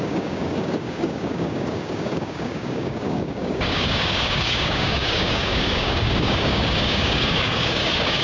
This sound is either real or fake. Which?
fake